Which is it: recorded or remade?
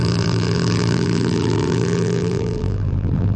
remade